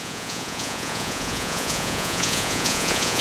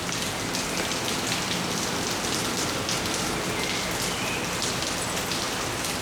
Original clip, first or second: second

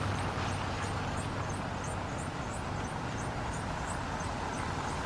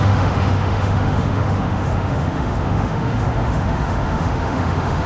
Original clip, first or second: first